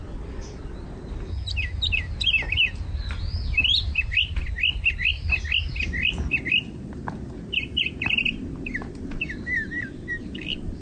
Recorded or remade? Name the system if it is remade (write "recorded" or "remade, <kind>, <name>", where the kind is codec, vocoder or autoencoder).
recorded